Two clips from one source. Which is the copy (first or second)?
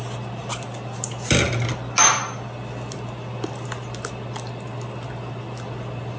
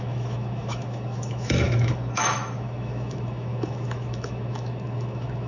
second